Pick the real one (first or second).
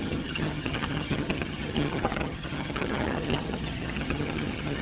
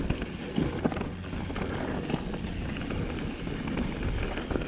second